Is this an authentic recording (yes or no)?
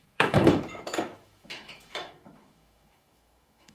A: no